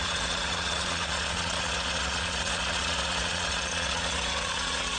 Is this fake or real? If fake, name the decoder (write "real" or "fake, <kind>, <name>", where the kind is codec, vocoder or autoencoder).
fake, vocoder, Vocos